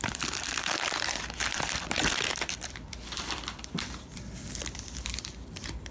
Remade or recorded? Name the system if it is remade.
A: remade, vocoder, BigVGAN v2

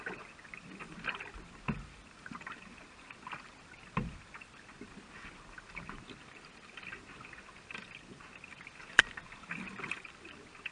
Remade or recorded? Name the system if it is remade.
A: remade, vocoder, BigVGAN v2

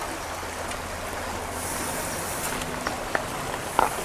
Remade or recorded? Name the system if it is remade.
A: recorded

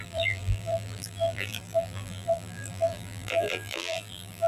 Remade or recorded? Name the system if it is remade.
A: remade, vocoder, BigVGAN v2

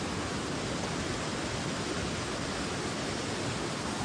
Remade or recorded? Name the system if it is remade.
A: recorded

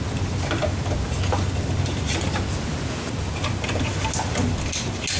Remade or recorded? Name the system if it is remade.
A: recorded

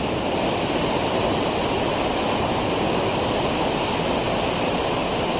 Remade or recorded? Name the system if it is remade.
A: recorded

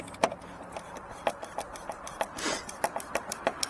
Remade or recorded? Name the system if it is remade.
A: remade, vocoder, BigVGAN v2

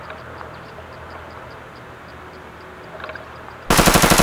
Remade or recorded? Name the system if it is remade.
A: recorded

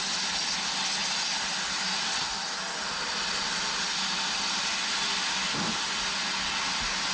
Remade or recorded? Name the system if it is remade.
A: recorded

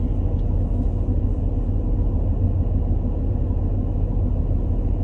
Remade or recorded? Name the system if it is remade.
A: recorded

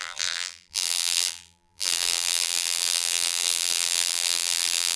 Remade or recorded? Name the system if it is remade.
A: remade, vocoder, BigVGAN v2